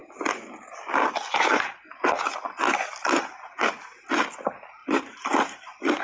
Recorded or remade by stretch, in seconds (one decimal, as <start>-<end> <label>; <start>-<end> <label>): 0.0-4.8 recorded; 4.8-5.3 remade; 5.3-6.0 recorded